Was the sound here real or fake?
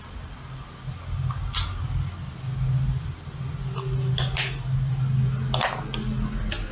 real